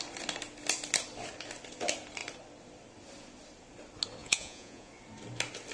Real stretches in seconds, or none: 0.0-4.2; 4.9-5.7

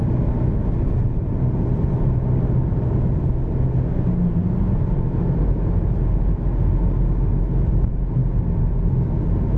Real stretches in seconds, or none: 0.0-9.6